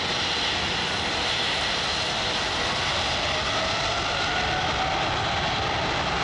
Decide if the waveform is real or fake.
real